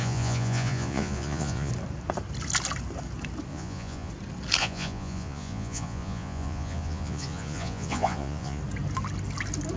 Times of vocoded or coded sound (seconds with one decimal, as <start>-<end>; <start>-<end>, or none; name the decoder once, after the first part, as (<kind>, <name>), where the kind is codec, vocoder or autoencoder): 0.0-1.7 (vocoder, Vocos); 3.5-4.1; 4.6-8.6